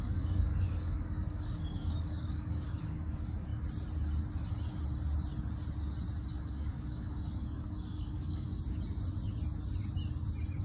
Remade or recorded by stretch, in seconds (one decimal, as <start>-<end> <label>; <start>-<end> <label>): 0.0-3.5 remade; 3.5-6.4 recorded; 6.4-8.5 remade; 8.5-10.6 recorded

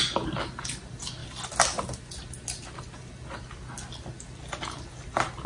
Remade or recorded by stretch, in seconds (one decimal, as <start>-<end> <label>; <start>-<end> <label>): 0.0-5.5 recorded

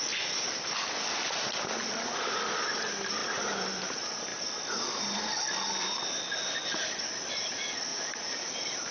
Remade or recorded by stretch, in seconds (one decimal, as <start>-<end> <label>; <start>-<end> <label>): 0.0-7.9 recorded; 7.9-8.5 remade; 8.5-8.9 recorded

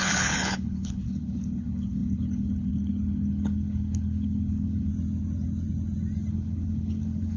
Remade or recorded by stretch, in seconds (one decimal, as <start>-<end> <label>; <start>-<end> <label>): 0.0-4.9 remade; 4.9-6.3 recorded; 6.3-7.4 remade

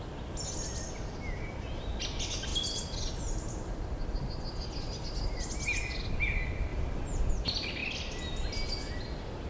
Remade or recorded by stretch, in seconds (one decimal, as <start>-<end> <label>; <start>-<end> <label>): 0.0-9.5 recorded

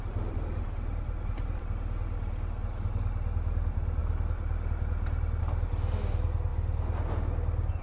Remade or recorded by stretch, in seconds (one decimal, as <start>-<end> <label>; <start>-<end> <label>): 0.0-7.8 recorded

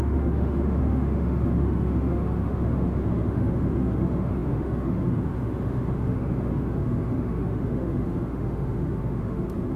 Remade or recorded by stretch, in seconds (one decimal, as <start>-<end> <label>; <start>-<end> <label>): 0.0-9.8 remade

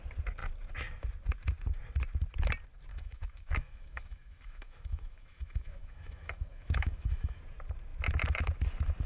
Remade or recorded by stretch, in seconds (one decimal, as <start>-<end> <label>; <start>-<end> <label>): 0.0-2.9 recorded; 2.9-7.4 remade; 7.4-9.1 recorded